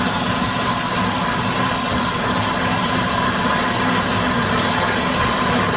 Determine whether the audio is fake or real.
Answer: real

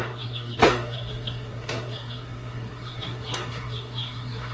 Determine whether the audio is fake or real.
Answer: fake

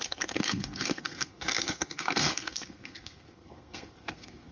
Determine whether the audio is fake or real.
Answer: fake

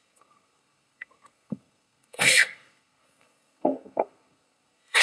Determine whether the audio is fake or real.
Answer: fake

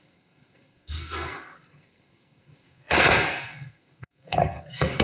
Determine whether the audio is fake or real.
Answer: fake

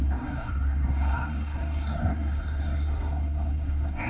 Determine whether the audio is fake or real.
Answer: fake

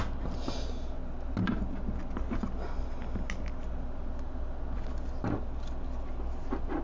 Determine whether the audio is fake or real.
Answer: real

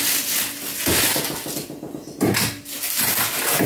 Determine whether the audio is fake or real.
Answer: real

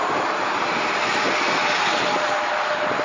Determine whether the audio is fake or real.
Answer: real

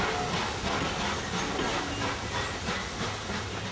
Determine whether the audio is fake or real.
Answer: real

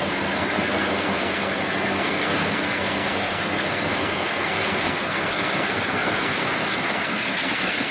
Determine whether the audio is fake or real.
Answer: fake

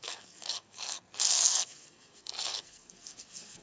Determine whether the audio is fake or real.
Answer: fake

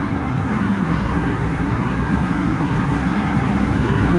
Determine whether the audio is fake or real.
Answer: fake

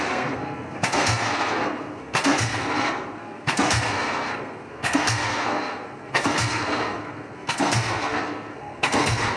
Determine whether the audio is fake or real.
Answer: fake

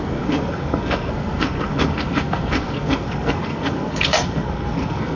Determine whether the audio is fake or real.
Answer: fake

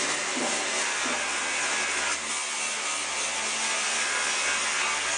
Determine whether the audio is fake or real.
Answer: real